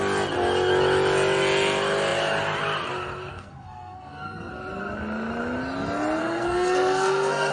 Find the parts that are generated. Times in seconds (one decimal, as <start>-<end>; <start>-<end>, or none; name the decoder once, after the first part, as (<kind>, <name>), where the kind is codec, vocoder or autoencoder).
3.3-4.5 (codec, SNAC); 6.2-7.5